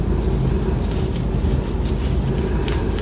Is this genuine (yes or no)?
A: yes